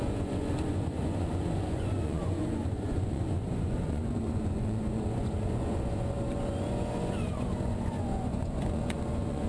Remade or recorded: remade